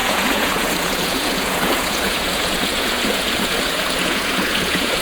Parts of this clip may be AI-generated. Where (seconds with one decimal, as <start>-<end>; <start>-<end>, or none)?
0.0-5.0